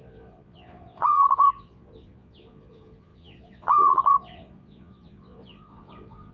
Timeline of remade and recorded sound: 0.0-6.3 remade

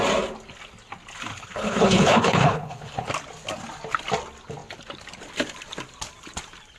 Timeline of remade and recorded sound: 0.0-1.3 recorded; 1.3-3.1 remade; 3.1-6.8 recorded

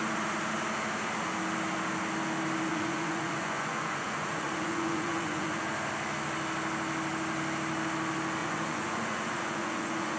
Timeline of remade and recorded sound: 0.0-2.7 recorded; 2.7-5.6 remade; 5.6-8.4 recorded; 8.4-10.2 remade